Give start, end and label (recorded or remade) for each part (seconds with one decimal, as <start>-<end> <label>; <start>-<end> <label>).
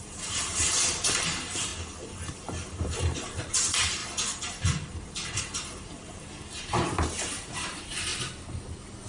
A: 0.0-1.7 remade; 1.7-2.3 recorded; 2.3-4.0 remade; 4.0-5.4 recorded; 5.4-8.1 remade; 8.1-9.1 recorded